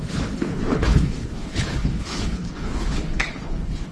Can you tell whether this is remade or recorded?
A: remade